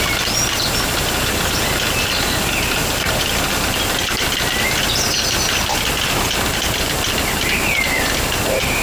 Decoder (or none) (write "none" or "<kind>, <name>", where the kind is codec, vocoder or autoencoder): none